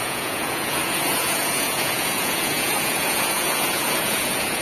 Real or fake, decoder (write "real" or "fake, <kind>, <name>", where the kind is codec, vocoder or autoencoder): fake, vocoder, Vocos